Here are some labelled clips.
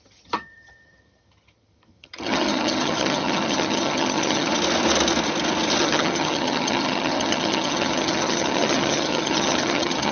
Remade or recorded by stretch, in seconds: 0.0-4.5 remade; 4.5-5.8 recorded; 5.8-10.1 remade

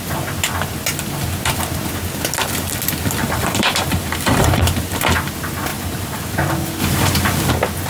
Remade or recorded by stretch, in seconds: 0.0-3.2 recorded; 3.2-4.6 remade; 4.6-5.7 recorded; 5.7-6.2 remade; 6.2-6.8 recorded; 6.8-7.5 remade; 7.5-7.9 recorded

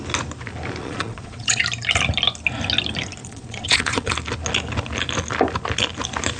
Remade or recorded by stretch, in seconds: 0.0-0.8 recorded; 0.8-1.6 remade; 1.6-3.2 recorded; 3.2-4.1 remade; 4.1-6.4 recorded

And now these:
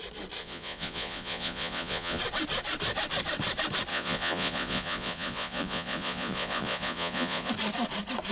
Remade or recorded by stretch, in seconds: 0.0-0.4 recorded; 0.4-2.2 remade; 2.2-3.9 recorded; 3.9-7.5 remade; 7.5-8.3 recorded

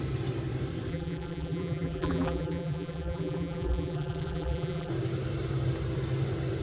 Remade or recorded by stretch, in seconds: 0.0-0.9 recorded; 0.9-4.9 remade; 4.9-6.6 recorded

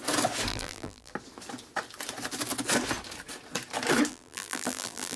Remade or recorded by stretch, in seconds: 0.0-0.5 recorded; 0.5-1.1 remade; 1.1-4.1 recorded; 4.1-5.2 remade

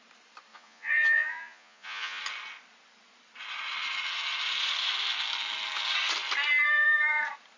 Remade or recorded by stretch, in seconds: 0.0-0.5 recorded; 0.5-2.2 remade; 2.2-7.6 recorded

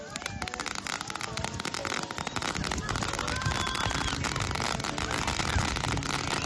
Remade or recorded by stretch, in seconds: 0.0-6.5 recorded